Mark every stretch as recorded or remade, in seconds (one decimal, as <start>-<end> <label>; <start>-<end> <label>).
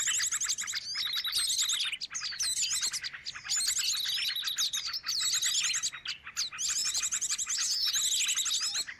0.0-6.8 recorded; 6.8-7.9 remade; 7.9-9.0 recorded